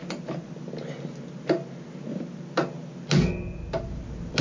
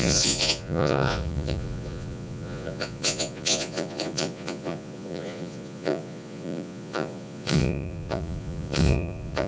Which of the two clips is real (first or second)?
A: first